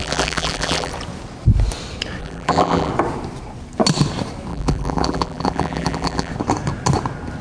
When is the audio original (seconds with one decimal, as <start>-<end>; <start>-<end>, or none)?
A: 0.9-2.2; 2.9-4.5; 6.3-7.4